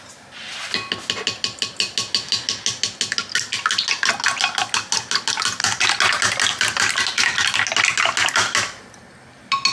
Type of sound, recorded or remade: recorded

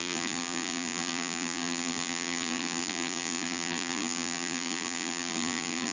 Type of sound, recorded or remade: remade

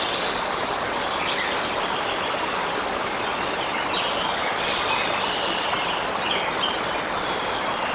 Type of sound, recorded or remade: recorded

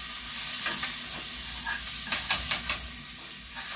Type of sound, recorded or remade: recorded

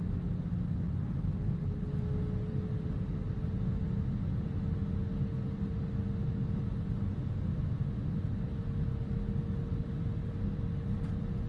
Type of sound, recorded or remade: recorded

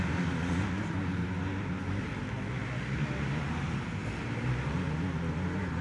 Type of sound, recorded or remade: recorded